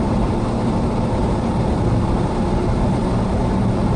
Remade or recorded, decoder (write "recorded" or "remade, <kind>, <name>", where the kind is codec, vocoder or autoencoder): remade, vocoder, BigVGAN v2